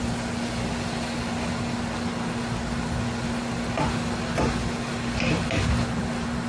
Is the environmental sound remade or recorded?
recorded